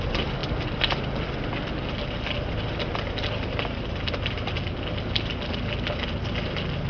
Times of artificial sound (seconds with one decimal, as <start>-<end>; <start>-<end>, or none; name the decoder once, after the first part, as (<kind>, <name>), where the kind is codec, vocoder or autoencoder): none